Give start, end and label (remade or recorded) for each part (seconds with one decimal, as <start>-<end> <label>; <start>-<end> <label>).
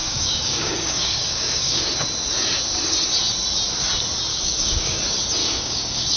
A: 0.0-1.8 remade; 1.8-4.3 recorded; 4.3-5.0 remade; 5.0-5.4 recorded; 5.4-6.2 remade